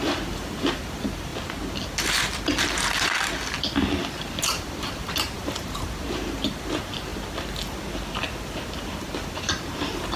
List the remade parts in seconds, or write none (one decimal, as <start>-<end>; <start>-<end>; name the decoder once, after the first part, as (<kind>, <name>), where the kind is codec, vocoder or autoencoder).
0.0-1.3 (vocoder, BigVGAN v2); 4.1-7.1; 9.3-10.2